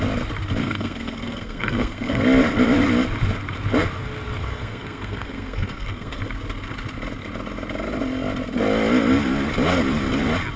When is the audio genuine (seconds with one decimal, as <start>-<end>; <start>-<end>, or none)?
0.0-0.6; 2.2-4.4; 6.2-10.6